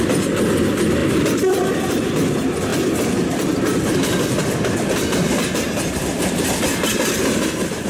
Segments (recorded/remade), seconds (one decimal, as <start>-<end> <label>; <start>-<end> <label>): 0.0-7.9 recorded